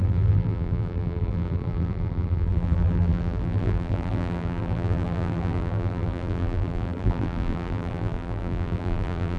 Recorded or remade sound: remade